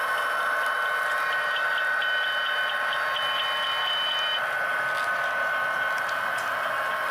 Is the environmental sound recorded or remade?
recorded